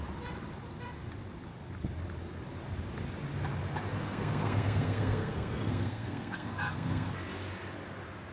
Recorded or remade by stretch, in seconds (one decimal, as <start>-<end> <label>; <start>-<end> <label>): 0.0-4.0 recorded; 4.0-7.1 remade; 7.1-8.3 recorded